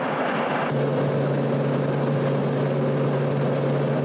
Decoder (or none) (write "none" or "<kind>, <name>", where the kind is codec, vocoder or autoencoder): none